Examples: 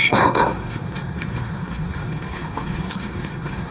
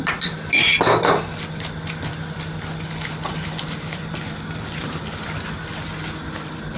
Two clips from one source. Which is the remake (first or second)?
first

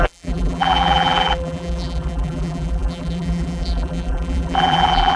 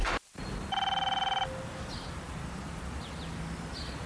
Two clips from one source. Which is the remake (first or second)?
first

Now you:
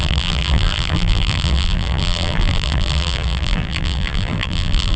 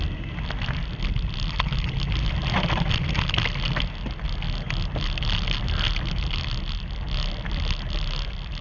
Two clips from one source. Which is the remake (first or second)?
first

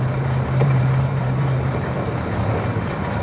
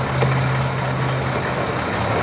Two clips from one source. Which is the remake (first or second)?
first